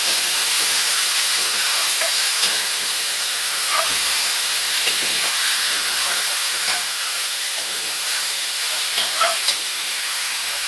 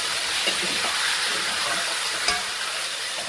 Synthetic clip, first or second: first